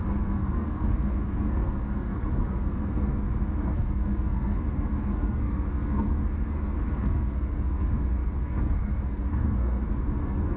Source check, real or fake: fake